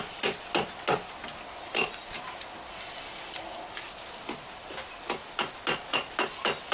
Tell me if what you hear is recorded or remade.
recorded